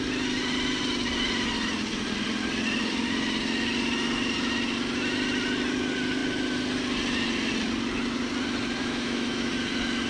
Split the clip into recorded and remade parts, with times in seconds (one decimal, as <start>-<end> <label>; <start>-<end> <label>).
0.0-8.8 recorded; 8.8-9.5 remade; 9.5-10.1 recorded